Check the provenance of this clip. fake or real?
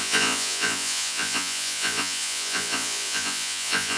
fake